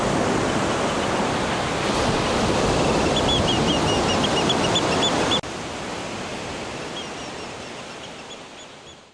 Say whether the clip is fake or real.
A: real